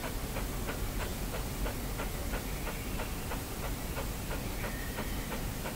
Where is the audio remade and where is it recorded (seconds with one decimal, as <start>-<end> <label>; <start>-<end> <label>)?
0.0-5.8 recorded